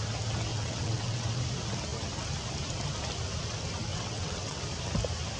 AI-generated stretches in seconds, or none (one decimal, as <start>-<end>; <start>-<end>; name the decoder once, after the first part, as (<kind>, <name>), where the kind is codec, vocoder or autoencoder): 0.5-1.4 (vocoder, WaveNeXt); 3.9-4.6